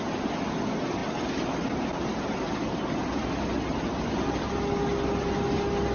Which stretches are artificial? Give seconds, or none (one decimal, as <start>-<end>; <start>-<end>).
none